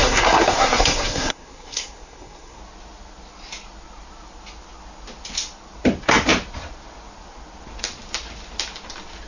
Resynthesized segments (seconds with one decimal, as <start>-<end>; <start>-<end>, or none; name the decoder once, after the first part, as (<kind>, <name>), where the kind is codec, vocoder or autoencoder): 0.0-2.6 (codec, SNAC)